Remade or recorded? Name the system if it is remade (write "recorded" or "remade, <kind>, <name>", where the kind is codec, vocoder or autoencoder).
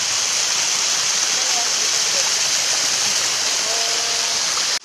recorded